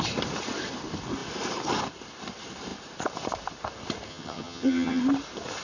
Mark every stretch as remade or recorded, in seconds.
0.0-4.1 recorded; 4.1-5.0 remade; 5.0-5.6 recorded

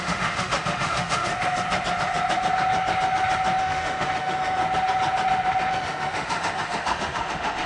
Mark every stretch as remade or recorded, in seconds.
0.0-1.3 remade; 1.3-3.6 recorded; 3.6-4.6 remade; 4.6-5.7 recorded; 5.7-7.7 remade

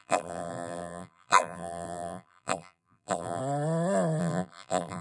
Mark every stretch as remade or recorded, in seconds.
0.0-3.4 remade; 3.4-4.2 recorded; 4.2-5.0 remade

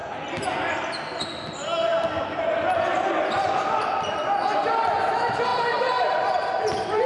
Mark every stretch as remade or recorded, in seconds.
0.0-5.5 recorded; 5.5-6.1 remade; 6.1-7.1 recorded

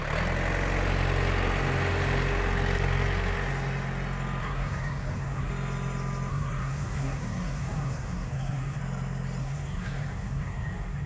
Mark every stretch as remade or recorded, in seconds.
0.0-4.4 recorded; 4.4-5.5 remade; 5.5-6.3 recorded; 6.3-8.8 remade; 8.8-9.4 recorded; 9.4-11.1 remade

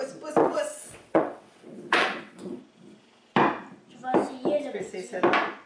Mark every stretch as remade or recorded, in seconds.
0.0-0.4 recorded; 0.4-2.6 remade; 2.6-5.7 recorded